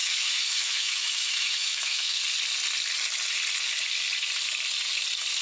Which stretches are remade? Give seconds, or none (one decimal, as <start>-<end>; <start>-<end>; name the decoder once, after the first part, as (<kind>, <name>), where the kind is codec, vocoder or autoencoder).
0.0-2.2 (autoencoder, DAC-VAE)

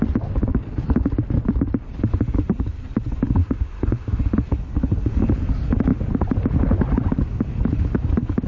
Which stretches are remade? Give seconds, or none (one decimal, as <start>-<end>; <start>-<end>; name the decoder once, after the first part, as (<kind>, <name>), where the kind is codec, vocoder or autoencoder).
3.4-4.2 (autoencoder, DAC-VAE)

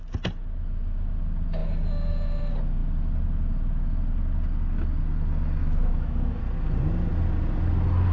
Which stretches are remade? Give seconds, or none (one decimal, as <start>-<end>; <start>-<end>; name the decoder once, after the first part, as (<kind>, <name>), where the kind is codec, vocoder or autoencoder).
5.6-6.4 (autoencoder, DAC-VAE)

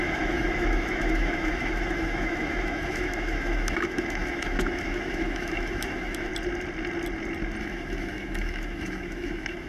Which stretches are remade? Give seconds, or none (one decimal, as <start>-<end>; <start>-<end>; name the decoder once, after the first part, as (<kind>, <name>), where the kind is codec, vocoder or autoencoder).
0.0-6.3 (autoencoder, DAC-VAE); 7.6-9.7

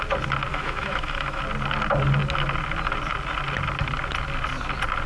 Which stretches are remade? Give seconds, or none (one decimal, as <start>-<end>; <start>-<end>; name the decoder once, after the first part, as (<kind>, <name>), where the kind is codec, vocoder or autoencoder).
0.5-1.4 (autoencoder, DAC-VAE)